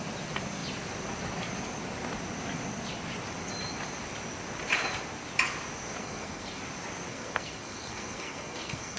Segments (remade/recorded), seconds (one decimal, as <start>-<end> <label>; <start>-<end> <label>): 0.0-6.0 recorded; 6.0-6.6 remade; 6.6-7.1 recorded; 7.1-9.0 remade